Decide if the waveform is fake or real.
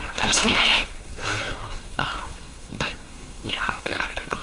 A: fake